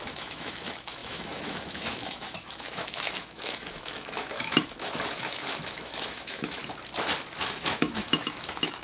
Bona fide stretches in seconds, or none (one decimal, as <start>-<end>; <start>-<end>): 6.6-7.6